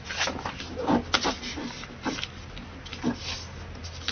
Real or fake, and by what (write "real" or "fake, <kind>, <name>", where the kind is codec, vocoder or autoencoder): real